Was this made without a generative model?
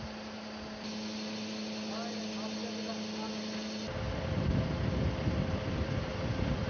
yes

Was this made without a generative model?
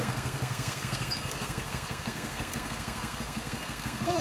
no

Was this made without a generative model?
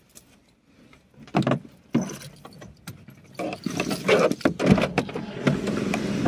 yes